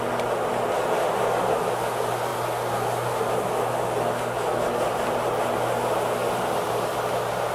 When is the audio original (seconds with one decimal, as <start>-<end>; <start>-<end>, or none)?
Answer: 0.0-7.5